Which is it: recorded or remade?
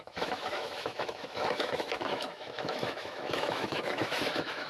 remade